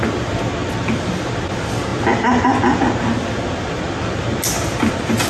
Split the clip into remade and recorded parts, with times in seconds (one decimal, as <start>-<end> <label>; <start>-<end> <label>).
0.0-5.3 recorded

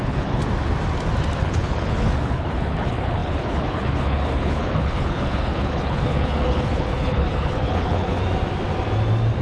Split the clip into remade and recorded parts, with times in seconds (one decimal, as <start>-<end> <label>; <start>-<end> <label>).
0.0-0.4 remade; 0.4-1.4 recorded; 1.4-8.2 remade; 8.2-9.4 recorded

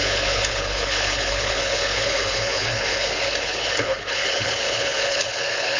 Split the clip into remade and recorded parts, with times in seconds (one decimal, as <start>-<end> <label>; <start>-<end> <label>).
0.0-5.8 remade

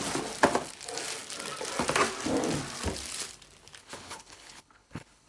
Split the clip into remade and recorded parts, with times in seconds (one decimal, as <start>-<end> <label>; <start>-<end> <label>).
0.0-3.8 recorded; 3.8-5.3 remade

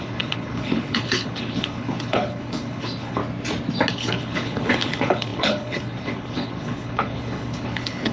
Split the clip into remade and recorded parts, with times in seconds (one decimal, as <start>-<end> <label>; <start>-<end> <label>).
0.0-3.2 remade; 3.2-3.9 recorded; 3.9-8.1 remade